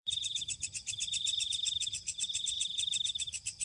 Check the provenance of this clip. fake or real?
fake